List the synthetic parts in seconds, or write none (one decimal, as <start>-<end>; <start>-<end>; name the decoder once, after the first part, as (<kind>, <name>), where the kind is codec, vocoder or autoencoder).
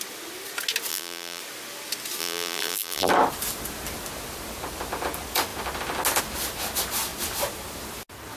0.9-1.4 (vocoder, BigVGAN v2); 2.2-3.1